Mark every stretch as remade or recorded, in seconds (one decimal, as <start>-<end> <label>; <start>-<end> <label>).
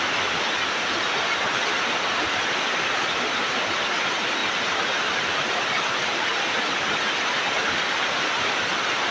0.0-9.1 recorded